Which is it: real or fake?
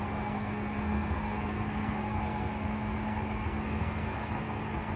fake